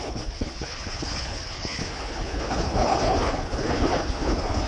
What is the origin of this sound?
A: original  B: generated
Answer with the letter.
B